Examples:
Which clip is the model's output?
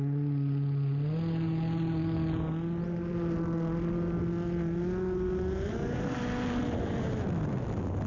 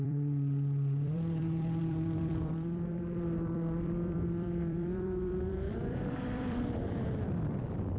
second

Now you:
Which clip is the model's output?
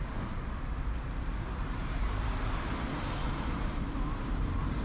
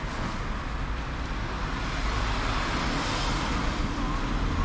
first